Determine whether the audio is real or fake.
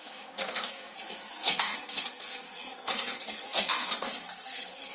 fake